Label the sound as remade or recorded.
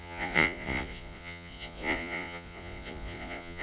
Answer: remade